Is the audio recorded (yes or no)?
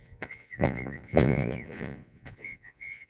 no